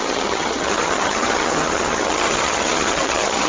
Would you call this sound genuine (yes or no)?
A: no